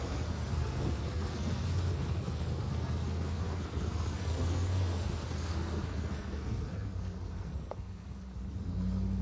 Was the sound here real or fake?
fake